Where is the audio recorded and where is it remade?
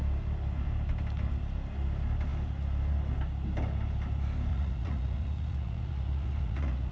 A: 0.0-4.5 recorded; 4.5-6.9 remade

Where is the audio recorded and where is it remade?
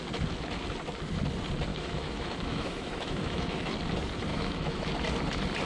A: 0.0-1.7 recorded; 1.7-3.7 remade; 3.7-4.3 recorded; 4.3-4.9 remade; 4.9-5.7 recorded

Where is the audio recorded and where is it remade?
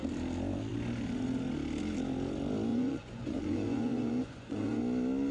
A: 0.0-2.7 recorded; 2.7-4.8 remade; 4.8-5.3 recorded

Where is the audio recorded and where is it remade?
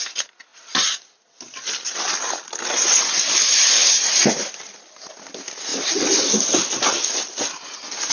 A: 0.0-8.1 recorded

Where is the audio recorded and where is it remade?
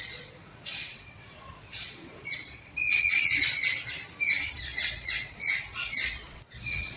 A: 0.0-3.6 remade; 3.6-4.6 recorded; 4.6-7.0 remade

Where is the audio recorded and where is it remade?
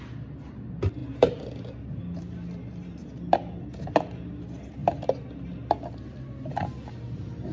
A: 0.0-7.5 recorded